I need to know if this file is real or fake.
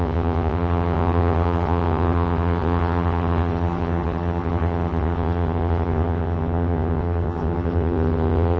fake